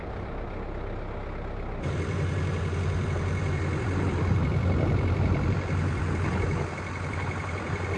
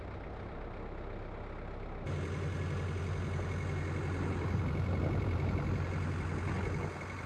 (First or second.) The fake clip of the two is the first